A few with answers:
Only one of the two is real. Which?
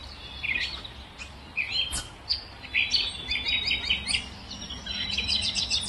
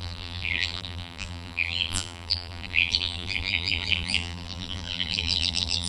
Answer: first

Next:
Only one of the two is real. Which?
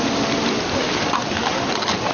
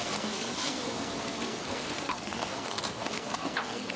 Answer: first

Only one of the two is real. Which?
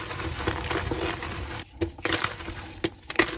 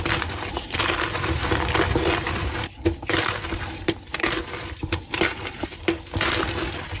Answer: first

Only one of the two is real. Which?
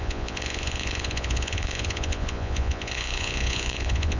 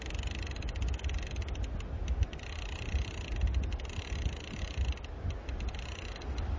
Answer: second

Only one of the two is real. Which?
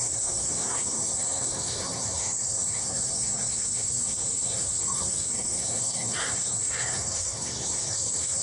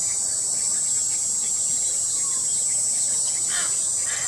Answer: second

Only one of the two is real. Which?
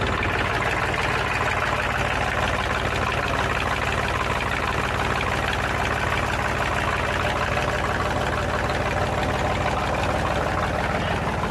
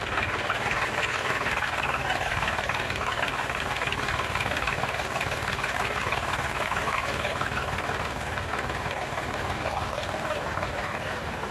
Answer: first